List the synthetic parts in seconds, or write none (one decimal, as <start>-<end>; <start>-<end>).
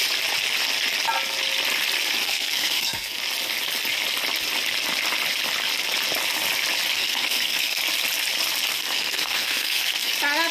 2.2-3.2; 6.9-7.8; 8.7-10.1